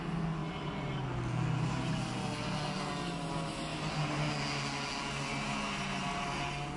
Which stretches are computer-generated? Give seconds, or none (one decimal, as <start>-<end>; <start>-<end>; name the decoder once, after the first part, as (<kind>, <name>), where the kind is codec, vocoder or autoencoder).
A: none